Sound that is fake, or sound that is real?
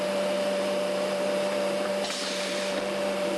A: fake